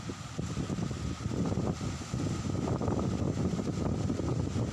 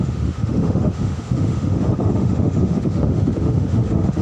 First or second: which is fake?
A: second